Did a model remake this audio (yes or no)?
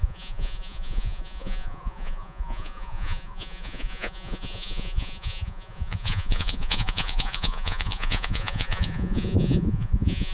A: yes